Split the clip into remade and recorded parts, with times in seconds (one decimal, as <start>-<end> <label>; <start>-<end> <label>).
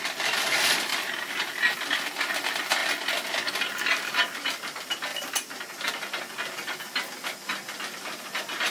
0.0-0.9 remade; 0.9-1.5 recorded; 1.5-2.8 remade; 2.8-3.7 recorded; 3.7-8.7 remade